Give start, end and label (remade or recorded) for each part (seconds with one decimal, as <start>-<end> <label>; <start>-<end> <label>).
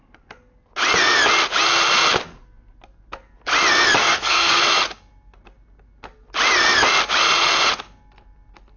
0.0-4.0 recorded; 4.0-4.6 remade; 4.6-8.8 recorded